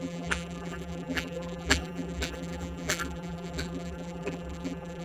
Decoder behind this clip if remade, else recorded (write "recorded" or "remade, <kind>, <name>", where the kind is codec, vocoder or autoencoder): remade, vocoder, BigVGAN v2